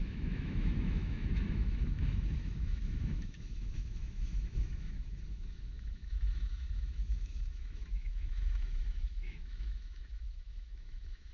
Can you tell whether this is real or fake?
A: fake